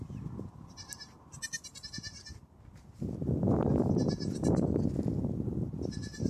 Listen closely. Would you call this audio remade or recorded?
recorded